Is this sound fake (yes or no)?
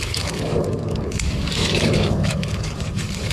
yes